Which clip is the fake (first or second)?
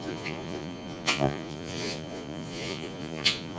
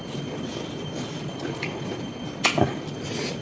first